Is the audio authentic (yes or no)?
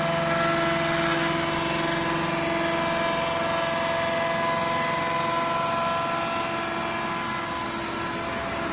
yes